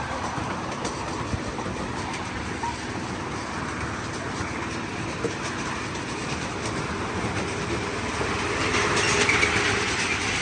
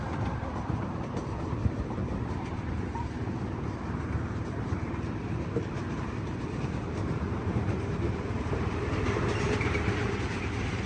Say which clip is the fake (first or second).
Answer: second